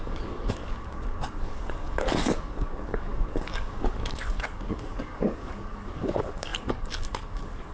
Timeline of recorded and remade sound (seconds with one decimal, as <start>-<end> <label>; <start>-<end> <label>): 0.0-7.7 remade